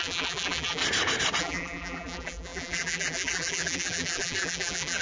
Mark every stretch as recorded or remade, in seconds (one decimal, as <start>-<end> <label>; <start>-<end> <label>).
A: 0.0-0.8 remade; 0.8-1.4 recorded; 1.4-5.0 remade